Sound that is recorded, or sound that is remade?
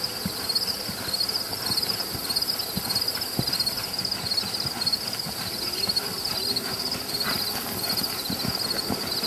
recorded